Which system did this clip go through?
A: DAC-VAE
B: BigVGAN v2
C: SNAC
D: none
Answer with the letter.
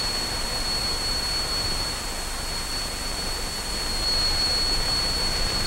D